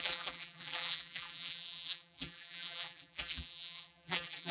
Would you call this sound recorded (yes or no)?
no